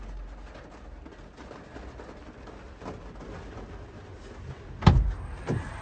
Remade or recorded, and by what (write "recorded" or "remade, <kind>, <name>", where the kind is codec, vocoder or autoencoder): recorded